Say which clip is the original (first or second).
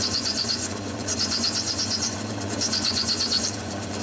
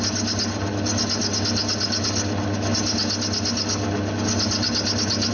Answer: second